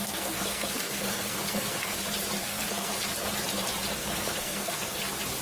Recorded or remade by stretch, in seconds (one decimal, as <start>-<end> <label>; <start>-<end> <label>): 0.0-2.0 remade; 2.0-2.4 recorded; 2.4-3.0 remade; 3.0-4.0 recorded; 4.0-5.0 remade; 5.0-5.4 recorded